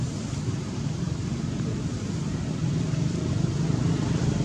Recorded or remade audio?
remade